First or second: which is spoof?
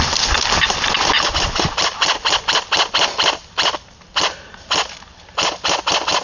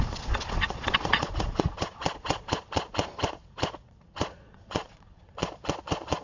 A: second